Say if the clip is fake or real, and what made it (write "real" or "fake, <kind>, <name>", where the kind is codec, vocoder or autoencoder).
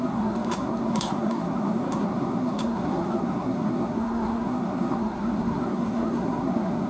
fake, codec, SNAC